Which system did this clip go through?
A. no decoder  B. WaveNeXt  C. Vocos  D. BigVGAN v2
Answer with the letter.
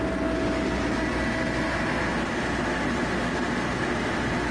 A